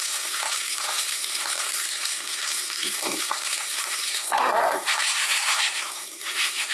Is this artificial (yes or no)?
yes